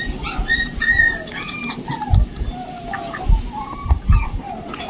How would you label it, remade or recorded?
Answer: recorded